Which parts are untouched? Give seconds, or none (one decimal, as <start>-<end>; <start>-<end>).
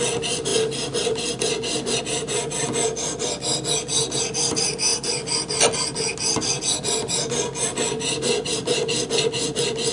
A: 0.0-9.9